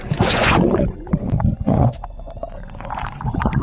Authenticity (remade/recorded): remade